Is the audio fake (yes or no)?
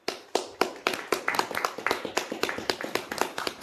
no